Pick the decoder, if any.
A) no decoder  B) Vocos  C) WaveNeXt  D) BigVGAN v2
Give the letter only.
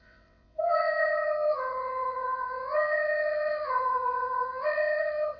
C